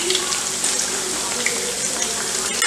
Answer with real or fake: real